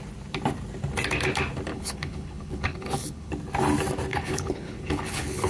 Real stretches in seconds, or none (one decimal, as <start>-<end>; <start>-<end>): 0.0-1.7; 3.3-4.1